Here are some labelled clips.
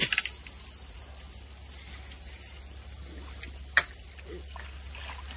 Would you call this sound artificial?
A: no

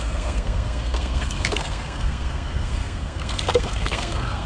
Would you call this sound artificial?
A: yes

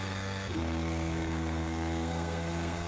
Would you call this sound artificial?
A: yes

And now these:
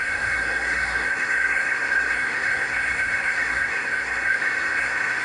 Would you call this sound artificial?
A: yes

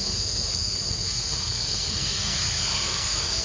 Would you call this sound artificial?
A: yes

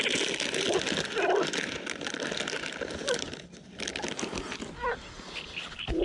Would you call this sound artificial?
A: no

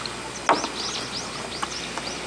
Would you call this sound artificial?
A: no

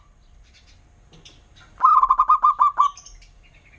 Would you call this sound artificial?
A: no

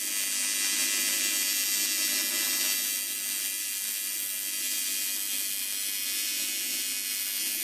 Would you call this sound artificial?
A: no